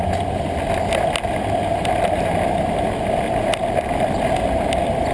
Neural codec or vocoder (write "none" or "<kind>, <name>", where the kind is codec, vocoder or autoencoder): none